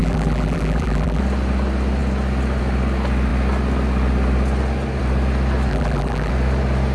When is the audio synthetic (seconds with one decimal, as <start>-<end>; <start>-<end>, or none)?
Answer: 0.0-1.2; 5.7-6.3